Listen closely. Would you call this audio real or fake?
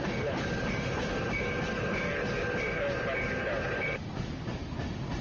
real